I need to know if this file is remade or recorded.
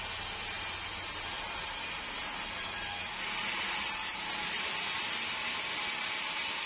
recorded